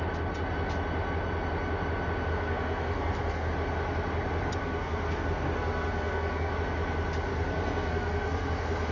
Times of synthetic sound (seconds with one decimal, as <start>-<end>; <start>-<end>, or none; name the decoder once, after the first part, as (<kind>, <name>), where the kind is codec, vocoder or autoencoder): 2.3-3.5 (codec, SNAC); 4.6-6.5; 7.3-8.9

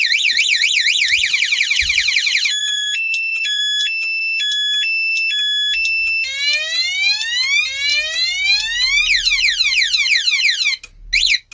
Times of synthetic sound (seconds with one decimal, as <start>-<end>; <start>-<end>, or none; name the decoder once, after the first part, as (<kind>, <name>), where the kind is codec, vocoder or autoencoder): 2.6-3.6 (vocoder, BigVGAN v2)

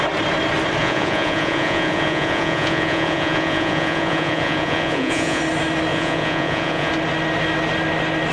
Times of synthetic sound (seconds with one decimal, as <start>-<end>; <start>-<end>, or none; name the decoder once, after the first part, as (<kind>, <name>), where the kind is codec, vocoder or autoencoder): 0.8-5.4 (vocoder, Vocos); 5.9-6.9

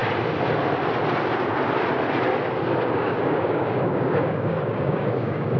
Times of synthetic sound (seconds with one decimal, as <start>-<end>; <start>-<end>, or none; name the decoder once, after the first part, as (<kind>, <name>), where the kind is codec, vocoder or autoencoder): 2.8-5.6 (codec, DAC)

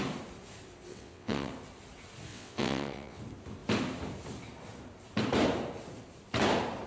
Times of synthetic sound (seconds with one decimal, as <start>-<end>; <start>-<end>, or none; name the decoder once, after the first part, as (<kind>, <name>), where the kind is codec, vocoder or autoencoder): 0.9-1.5 (vocoder, WaveNeXt); 2.3-3.2

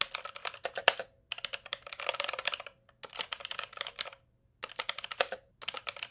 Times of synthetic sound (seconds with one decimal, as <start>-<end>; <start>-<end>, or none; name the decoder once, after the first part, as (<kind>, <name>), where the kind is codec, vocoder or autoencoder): none

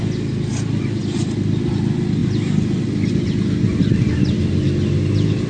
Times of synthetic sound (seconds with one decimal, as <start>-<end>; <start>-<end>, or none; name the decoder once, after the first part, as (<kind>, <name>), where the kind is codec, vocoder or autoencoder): none

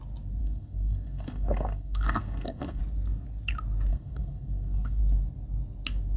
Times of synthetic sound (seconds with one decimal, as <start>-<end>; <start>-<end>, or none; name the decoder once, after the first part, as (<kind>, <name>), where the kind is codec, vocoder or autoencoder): 0.4-2.8 (codec, SNAC); 3.9-5.0